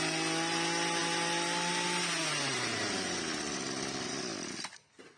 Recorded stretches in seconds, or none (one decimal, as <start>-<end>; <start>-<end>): 0.0-5.2

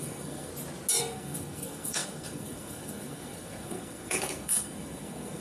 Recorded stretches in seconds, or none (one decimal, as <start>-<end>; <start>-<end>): 0.5-1.0

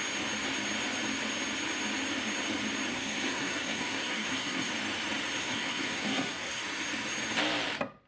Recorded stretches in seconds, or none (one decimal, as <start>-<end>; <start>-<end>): 0.0-2.9; 4.7-5.4; 6.6-8.1

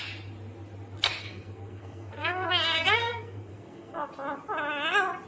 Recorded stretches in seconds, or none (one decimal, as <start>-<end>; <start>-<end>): 0.0-1.2; 4.1-5.3